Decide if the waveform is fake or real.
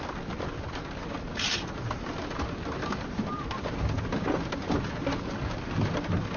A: real